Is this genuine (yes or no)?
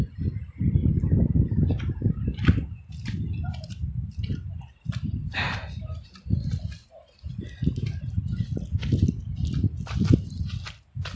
yes